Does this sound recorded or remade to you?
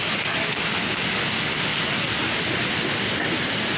recorded